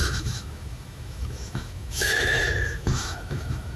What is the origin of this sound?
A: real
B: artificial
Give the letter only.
B